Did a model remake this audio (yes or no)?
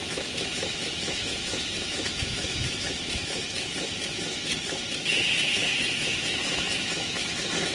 yes